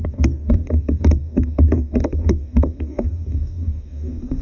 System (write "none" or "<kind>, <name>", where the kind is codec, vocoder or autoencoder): codec, DAC